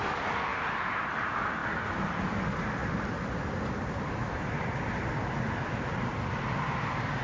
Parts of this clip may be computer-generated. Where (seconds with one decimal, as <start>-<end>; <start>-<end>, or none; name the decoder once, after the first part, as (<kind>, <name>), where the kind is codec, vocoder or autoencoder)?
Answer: none